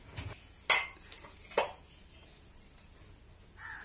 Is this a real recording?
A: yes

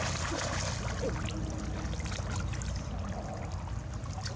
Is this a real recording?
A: yes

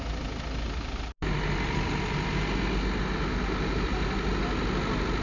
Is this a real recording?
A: yes